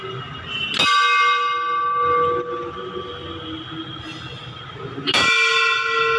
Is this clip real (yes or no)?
yes